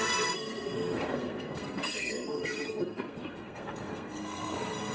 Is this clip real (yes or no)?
no